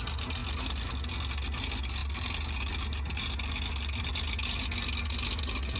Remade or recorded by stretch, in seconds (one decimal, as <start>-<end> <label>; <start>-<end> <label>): 0.0-5.8 recorded